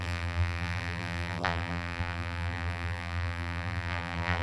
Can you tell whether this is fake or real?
fake